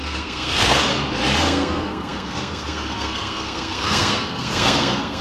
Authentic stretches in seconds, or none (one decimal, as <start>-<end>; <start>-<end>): 0.9-1.4